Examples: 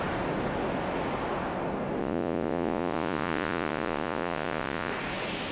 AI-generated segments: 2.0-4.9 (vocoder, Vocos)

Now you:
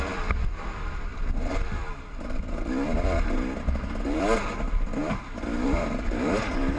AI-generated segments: 0.0-6.8 (vocoder, BigVGAN v2)

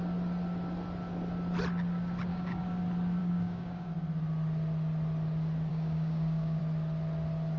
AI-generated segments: 2.3-2.8 (codec, DAC); 3.2-3.9; 5.7-6.6

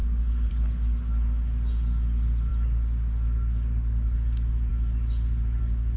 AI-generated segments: none